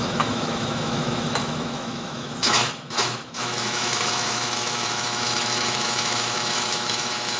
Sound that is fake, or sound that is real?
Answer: fake